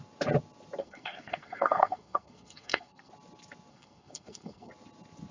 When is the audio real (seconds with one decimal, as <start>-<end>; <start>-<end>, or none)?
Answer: 0.0-0.8; 3.1-3.7; 4.7-5.3

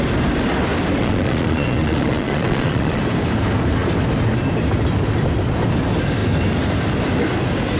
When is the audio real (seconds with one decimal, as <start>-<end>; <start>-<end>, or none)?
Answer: 0.0-1.0; 3.0-7.8